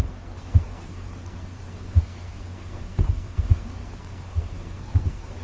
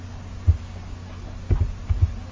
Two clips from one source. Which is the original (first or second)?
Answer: second